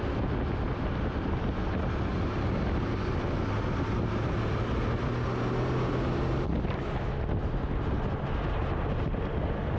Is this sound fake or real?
real